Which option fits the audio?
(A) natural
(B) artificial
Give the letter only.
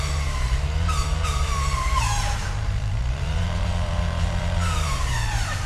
B